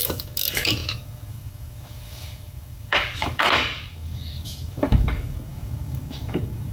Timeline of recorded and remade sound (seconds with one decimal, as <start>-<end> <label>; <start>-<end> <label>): 0.0-6.7 remade